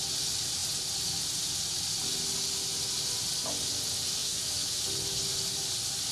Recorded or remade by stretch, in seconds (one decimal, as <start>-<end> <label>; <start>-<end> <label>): 0.0-4.2 recorded; 4.2-4.8 remade; 4.8-6.1 recorded